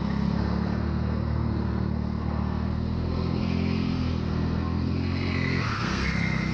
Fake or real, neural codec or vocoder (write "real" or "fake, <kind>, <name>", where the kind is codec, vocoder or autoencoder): fake, codec, SNAC